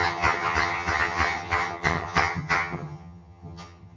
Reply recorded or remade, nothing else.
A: remade